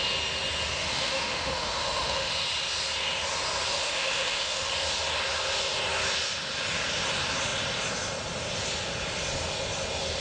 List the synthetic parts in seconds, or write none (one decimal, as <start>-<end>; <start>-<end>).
0.8-2.3; 3.7-4.7